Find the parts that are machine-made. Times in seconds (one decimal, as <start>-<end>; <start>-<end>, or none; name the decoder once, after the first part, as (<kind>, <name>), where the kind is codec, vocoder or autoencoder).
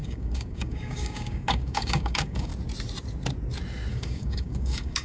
0.0-2.5 (codec, DAC); 3.9-5.0